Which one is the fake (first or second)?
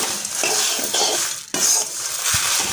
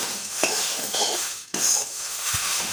second